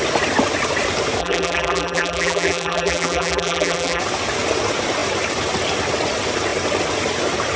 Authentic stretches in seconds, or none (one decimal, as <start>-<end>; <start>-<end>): 0.0-1.2; 4.0-7.6